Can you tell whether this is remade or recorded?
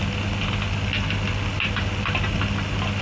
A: recorded